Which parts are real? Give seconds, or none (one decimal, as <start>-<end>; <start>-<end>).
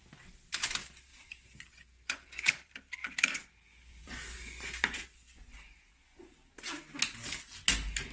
0.0-1.1; 2.5-3.0; 6.6-8.1